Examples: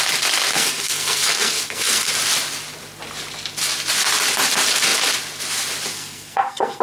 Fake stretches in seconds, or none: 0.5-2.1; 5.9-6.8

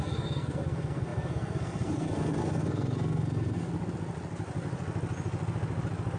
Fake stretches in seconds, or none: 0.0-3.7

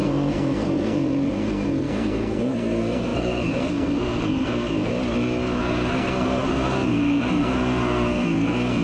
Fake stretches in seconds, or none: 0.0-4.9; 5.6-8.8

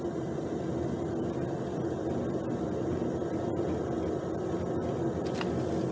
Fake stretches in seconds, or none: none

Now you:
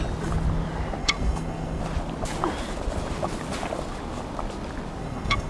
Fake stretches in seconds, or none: 1.0-1.8; 5.0-5.5

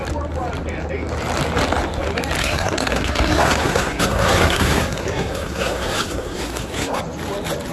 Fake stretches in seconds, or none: 2.4-7.0